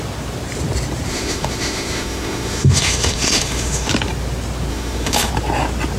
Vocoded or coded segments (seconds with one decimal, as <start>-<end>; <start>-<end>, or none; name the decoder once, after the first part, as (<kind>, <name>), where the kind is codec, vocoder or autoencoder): 1.1-3.9 (autoencoder, DAC-VAE); 4.7-5.3